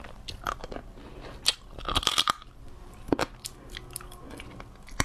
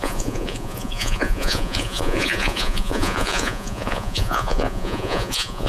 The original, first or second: first